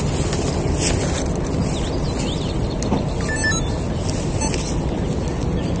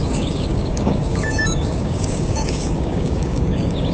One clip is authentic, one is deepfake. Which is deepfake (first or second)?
second